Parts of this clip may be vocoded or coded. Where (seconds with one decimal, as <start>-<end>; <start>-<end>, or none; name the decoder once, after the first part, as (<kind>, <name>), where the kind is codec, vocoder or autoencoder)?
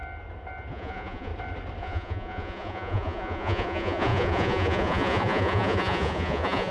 0.7-1.3 (vocoder, Vocos); 1.8-6.7